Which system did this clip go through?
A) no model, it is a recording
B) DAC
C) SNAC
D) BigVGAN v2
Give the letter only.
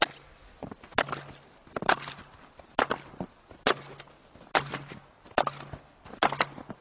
A